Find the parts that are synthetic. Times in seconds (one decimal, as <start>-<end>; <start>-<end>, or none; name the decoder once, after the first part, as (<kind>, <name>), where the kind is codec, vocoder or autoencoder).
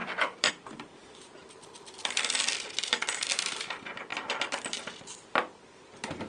0.0-0.5 (vocoder, BigVGAN v2); 1.0-2.2; 4.1-4.8